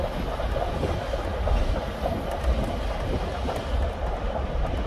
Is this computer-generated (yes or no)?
no